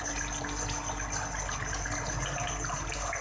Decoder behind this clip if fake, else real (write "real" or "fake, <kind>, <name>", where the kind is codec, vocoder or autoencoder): real